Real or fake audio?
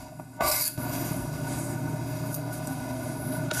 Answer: fake